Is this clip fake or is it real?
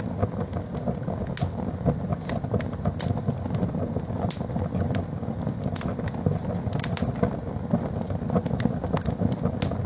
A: real